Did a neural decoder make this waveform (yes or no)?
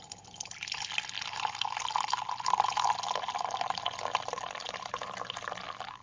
no